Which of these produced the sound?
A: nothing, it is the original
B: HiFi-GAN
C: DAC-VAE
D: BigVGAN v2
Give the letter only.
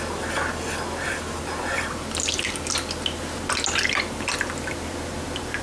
A